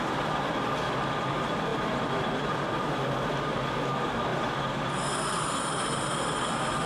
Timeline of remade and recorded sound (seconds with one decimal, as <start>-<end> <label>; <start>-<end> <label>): 0.0-1.7 recorded; 1.7-2.8 remade; 2.8-6.9 recorded